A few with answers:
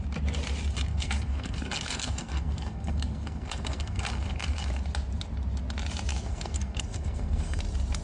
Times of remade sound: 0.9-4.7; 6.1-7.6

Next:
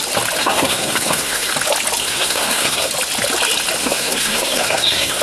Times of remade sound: 0.4-1.5; 2.0-2.9; 3.8-5.2

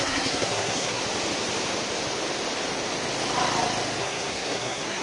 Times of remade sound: 0.0-1.0; 4.0-5.0

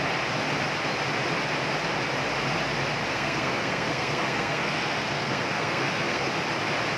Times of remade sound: 3.1-6.3